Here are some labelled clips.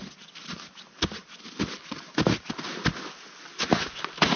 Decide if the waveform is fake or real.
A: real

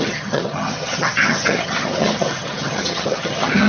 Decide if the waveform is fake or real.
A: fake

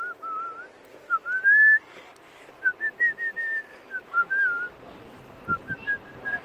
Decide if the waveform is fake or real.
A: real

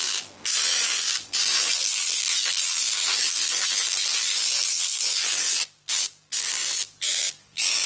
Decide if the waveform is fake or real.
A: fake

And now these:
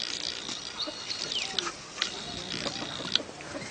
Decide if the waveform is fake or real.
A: real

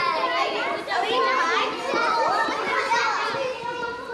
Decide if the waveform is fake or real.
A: real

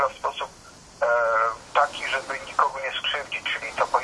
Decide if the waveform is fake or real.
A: real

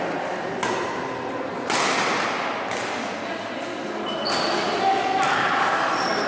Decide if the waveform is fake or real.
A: real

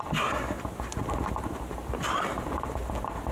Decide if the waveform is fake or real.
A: real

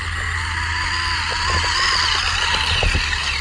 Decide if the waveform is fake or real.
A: real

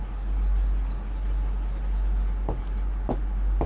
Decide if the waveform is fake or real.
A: real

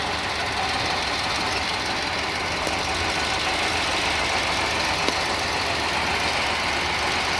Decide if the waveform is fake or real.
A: real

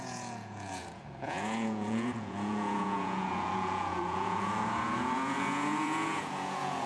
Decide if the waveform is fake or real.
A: fake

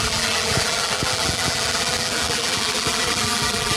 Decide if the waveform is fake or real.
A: fake